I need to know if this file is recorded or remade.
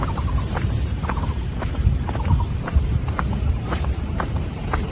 remade